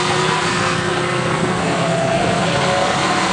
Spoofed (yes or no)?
yes